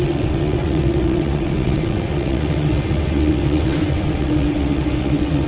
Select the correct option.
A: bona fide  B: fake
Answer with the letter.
B